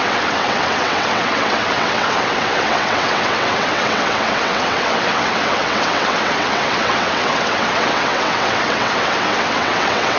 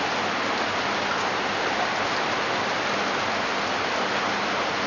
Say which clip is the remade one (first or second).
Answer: first